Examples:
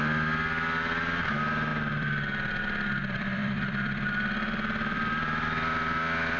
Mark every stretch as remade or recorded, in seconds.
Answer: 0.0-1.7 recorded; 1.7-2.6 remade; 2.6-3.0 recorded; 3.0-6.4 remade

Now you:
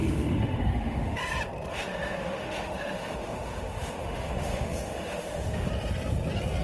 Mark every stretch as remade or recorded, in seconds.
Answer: 0.0-1.2 remade; 1.2-1.7 recorded; 1.7-5.7 remade; 5.7-6.6 recorded

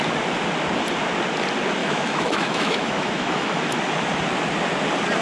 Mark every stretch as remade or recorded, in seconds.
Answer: 0.0-1.8 recorded; 1.8-3.8 remade; 3.8-5.2 recorded